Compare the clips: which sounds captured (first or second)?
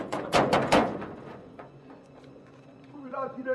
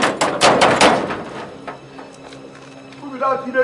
second